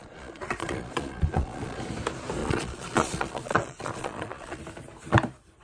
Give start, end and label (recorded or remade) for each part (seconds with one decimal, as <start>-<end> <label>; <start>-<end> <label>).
0.0-1.8 remade; 1.8-2.4 recorded; 2.4-4.6 remade; 4.6-5.6 recorded